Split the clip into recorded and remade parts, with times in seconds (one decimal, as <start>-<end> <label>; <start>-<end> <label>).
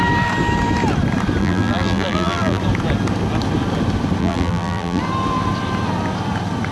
0.0-1.4 recorded; 1.4-2.6 remade; 2.6-4.2 recorded; 4.2-5.0 remade; 5.0-6.7 recorded